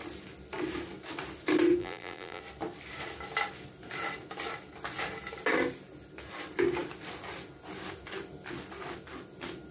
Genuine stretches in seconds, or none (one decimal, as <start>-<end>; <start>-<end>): 0.0-1.8; 2.4-9.7